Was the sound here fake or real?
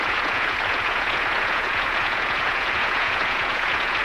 fake